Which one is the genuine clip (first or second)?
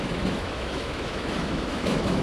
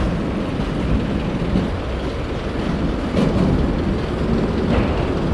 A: second